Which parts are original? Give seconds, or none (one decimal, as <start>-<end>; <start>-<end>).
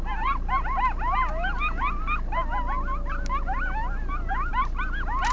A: 0.0-5.3